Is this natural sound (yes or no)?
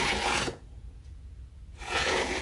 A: no